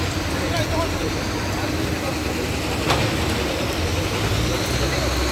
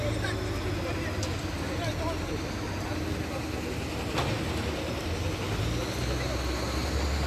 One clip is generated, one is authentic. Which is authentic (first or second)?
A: second